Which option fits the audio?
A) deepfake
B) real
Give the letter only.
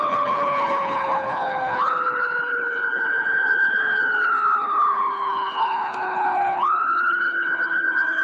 A